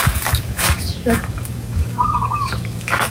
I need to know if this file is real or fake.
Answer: fake